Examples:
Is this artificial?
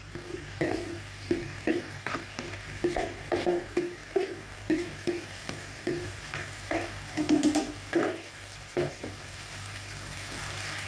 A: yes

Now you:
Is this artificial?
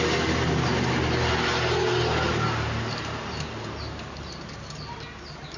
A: no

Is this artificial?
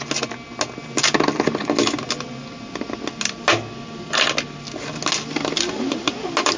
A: no